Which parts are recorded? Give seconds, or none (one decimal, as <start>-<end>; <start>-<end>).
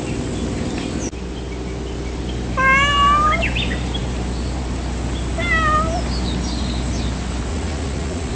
0.0-7.5